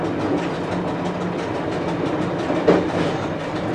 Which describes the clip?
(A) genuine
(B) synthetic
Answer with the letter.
A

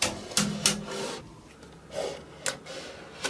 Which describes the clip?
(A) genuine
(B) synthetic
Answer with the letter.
A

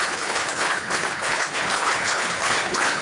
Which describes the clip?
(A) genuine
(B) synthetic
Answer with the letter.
B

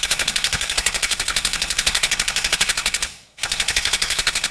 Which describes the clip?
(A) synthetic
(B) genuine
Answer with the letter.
A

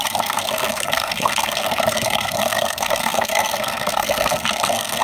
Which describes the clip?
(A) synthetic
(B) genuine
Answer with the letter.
A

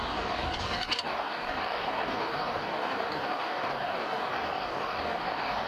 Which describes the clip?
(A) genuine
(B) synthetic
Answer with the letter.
B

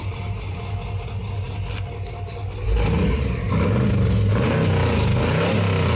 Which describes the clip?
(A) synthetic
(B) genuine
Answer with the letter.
B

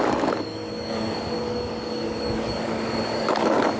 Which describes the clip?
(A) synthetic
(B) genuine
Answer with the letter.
A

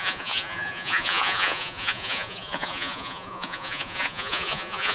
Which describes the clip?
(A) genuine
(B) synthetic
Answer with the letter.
B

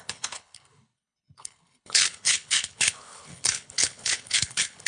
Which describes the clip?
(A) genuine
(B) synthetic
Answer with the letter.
B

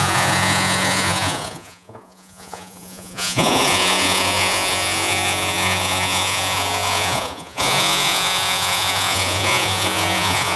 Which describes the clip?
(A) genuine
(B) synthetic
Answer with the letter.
B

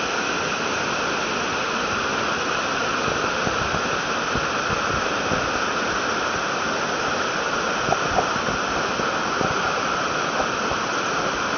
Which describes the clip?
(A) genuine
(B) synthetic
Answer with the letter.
A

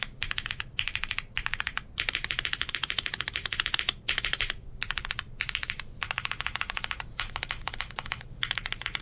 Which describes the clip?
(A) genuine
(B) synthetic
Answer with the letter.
B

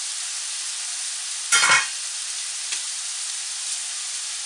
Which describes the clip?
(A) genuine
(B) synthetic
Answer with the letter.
A